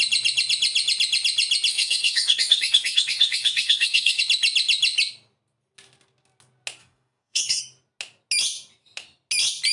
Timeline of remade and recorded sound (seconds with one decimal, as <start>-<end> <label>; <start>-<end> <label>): 0.0-1.7 recorded; 1.7-4.2 remade; 4.2-6.8 recorded; 6.8-7.6 remade; 7.6-9.7 recorded

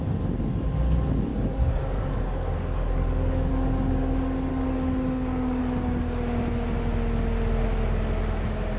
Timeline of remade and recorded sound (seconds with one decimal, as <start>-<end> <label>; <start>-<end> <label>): 0.0-1.3 recorded; 1.3-3.5 remade; 3.5-4.5 recorded; 4.5-5.6 remade; 5.6-8.8 recorded